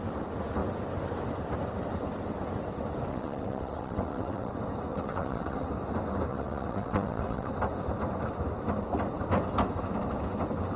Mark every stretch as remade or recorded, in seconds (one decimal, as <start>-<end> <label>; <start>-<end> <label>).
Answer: 0.0-3.1 recorded; 3.1-4.5 remade; 4.5-4.9 recorded; 4.9-5.7 remade; 5.7-6.3 recorded; 6.3-7.5 remade; 7.5-10.8 recorded